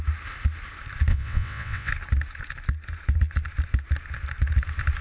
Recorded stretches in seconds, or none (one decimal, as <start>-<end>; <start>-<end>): 0.0-1.1; 1.9-5.0